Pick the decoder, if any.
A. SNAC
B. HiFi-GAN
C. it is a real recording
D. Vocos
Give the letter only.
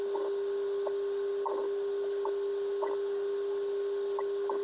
C